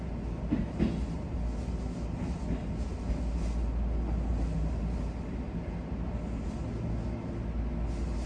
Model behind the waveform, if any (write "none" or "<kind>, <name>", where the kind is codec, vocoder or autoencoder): none